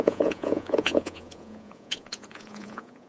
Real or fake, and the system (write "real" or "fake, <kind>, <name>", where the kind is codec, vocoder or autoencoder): fake, vocoder, Vocos